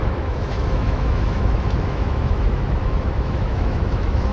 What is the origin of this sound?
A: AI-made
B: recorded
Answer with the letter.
A